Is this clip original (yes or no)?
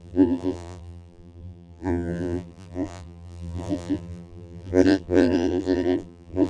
no